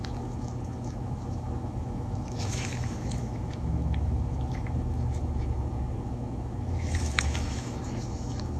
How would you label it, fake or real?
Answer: fake